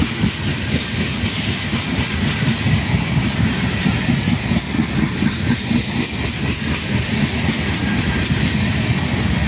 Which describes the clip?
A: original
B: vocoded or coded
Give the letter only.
A